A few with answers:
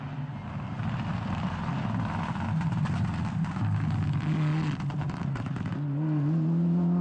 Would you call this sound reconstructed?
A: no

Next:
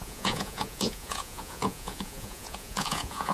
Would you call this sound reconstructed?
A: yes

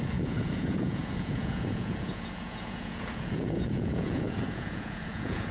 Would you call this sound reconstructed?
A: yes